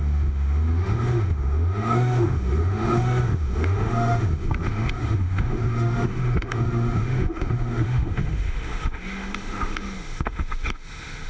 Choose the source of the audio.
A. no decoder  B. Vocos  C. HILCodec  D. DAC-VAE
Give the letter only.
D